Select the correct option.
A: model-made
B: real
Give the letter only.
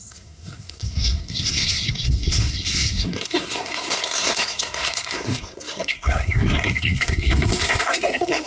A